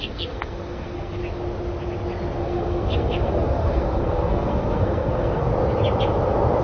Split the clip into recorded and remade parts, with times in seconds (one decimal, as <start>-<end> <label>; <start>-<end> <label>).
0.0-1.2 remade; 1.2-2.4 recorded; 2.4-5.5 remade; 5.5-6.6 recorded